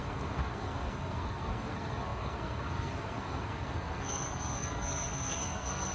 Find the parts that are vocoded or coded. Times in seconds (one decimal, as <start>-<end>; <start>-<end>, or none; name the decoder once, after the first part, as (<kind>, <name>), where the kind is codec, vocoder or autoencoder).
0.0-5.9 (codec, SNAC)